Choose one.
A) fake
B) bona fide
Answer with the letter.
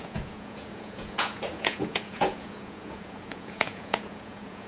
A